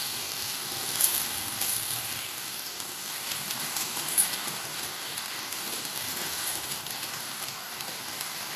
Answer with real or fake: fake